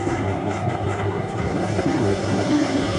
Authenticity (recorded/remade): remade